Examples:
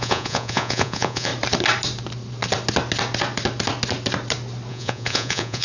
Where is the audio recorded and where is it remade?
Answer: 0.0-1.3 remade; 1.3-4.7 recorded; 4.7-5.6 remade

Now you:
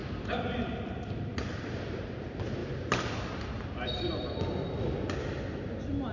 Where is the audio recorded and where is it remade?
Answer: 0.0-2.0 remade; 2.0-2.6 recorded; 2.6-4.4 remade; 4.4-6.1 recorded

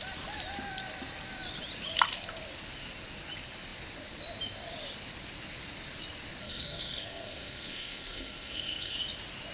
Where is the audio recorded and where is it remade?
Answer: 0.0-6.4 recorded; 6.4-9.0 remade; 9.0-9.5 recorded

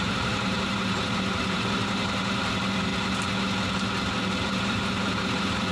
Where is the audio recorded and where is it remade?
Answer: 0.0-2.9 remade; 2.9-4.3 recorded; 4.3-5.7 remade

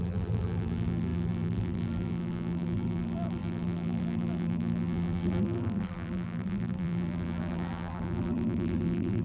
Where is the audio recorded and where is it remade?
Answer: 0.0-9.2 remade